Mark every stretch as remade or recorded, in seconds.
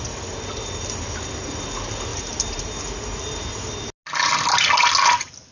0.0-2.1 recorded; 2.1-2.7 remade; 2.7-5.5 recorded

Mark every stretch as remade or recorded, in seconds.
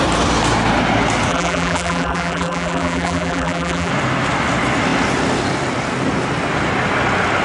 0.0-1.3 recorded; 1.3-3.9 remade; 3.9-7.4 recorded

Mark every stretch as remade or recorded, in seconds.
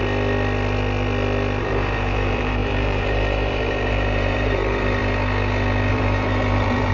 0.0-1.6 recorded; 1.6-5.0 remade; 5.0-5.9 recorded; 5.9-6.9 remade